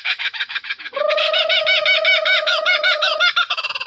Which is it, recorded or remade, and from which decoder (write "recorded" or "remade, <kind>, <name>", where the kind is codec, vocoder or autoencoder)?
remade, autoencoder, DAC-VAE